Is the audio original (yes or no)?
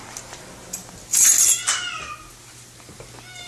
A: yes